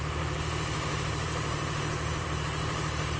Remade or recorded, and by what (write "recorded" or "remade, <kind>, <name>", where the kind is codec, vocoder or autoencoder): remade, vocoder, BigVGAN v2